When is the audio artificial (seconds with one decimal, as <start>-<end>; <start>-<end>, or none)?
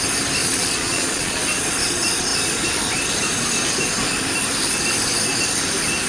0.4-1.4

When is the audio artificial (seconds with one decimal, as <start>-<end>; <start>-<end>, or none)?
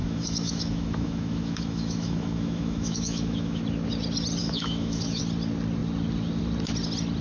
0.0-3.6; 4.4-5.2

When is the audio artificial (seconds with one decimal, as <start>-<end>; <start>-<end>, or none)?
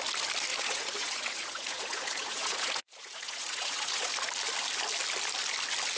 0.5-4.1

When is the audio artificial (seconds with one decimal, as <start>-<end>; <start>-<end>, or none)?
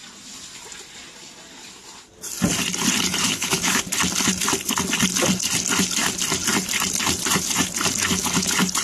3.2-3.8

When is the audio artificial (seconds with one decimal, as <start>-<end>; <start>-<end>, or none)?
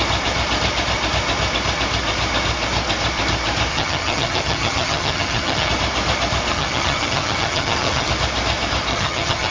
3.7-5.7; 6.5-8.1; 8.9-9.5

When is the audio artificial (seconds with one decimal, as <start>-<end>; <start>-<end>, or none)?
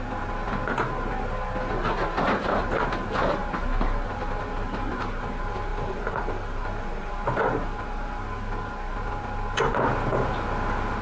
5.7-7.1